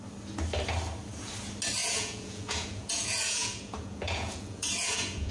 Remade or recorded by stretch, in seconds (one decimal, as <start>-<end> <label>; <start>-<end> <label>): 0.0-1.8 recorded; 1.8-5.3 remade